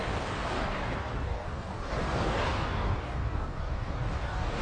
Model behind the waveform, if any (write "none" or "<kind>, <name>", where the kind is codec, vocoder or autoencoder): codec, DAC